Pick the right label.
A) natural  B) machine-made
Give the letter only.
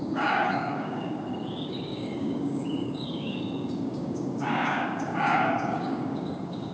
B